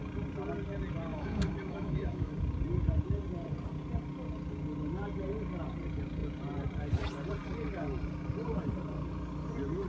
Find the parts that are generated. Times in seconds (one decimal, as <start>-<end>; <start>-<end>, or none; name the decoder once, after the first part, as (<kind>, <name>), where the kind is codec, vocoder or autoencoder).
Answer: 1.1-2.3 (autoencoder, DAC-VAE)